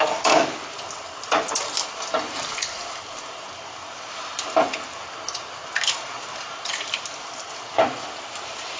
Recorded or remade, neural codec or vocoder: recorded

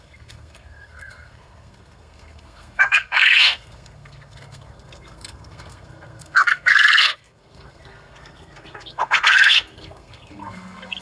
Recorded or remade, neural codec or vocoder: remade, codec, SNAC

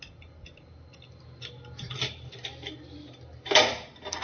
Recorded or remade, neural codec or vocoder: recorded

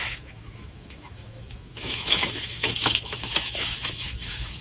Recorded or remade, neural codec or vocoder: remade, autoencoder, DAC-VAE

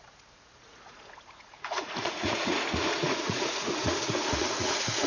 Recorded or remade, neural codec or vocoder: remade, vocoder, Vocos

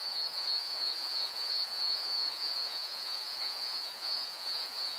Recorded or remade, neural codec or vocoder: remade, vocoder, Vocos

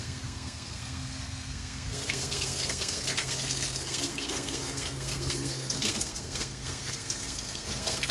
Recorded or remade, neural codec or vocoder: remade, codec, SNAC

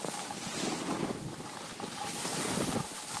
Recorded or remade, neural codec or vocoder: recorded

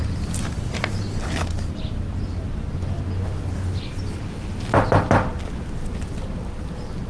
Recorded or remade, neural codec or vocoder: recorded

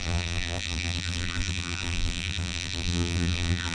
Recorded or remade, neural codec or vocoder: remade, vocoder, BigVGAN v2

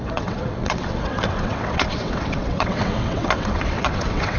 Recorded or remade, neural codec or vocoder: remade, vocoder, WaveNeXt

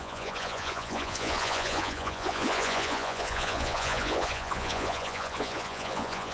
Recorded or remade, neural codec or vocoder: remade, vocoder, Vocos